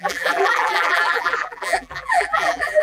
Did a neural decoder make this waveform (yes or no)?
yes